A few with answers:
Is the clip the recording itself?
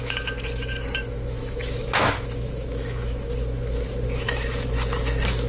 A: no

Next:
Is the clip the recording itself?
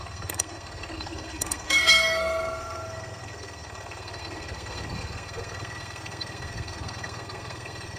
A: no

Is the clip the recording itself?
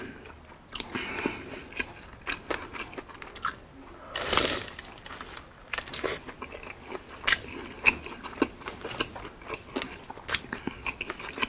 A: yes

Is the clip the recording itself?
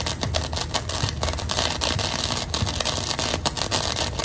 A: yes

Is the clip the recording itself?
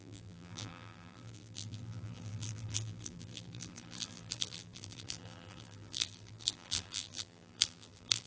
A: no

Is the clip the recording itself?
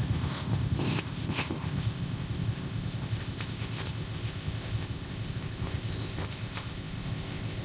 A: no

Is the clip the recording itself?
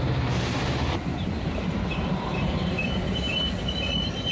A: no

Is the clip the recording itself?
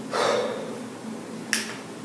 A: yes